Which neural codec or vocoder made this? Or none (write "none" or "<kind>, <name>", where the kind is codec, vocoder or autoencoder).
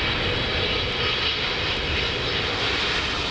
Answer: none